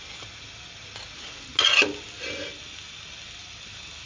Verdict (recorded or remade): recorded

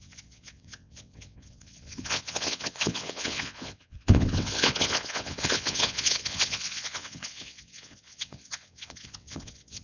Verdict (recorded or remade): remade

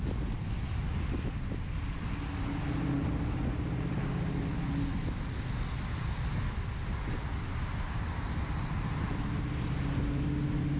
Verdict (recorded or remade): recorded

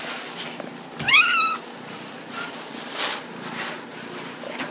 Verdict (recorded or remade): recorded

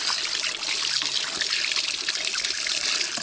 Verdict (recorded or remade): recorded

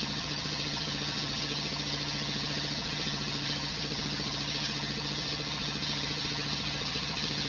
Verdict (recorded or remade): remade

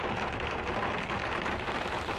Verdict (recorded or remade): recorded